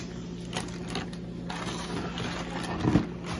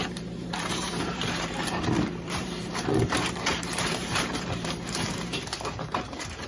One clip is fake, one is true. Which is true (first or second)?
first